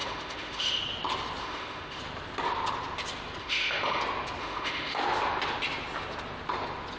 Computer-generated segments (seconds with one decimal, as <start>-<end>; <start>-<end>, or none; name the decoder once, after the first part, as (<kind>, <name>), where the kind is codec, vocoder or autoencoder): 0.0-0.8 (autoencoder, DAC-VAE); 1.4-2.0; 3.4-4.0; 4.4-5.0